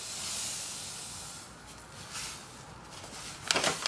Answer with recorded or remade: recorded